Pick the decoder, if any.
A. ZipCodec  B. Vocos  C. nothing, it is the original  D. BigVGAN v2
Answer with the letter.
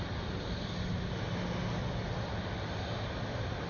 C